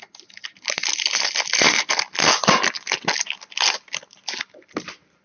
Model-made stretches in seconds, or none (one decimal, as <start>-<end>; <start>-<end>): none